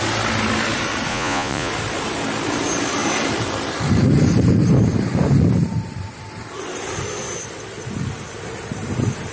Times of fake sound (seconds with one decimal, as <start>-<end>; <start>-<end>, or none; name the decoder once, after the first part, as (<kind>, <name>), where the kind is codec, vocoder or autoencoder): 1.1-1.7 (vocoder, Vocos)

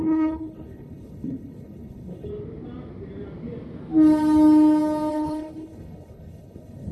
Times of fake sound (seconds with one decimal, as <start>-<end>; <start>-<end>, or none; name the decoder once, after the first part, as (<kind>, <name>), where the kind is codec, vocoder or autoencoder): 0.0-2.3 (codec, HILCodec); 5.1-6.9

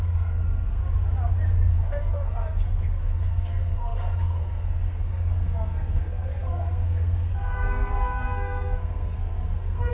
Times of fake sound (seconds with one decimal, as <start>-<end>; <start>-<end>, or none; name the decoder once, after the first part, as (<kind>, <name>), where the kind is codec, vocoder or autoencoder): 0.0-0.8 (codec, SNAC); 1.7-9.9